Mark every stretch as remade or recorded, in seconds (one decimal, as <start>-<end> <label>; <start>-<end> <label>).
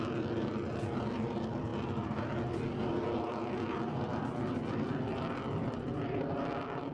0.0-6.9 recorded